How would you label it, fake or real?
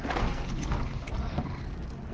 fake